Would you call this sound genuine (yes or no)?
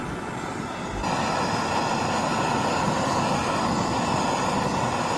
yes